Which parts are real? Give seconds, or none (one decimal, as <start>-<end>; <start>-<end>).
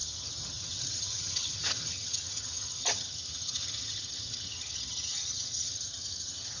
none